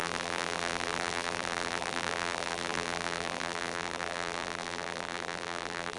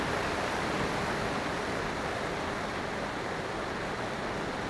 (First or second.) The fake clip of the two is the first